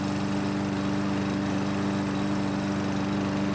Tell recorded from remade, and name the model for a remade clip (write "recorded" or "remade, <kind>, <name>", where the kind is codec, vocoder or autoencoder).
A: recorded